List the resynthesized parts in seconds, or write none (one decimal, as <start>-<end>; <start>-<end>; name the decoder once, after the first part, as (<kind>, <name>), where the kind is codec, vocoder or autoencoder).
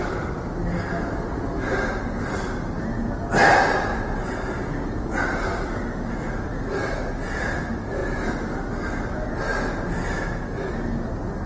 none